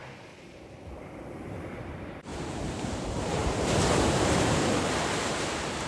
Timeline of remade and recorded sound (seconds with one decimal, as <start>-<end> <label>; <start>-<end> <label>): 0.0-1.7 recorded; 1.7-5.9 remade